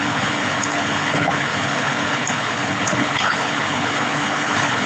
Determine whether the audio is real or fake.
fake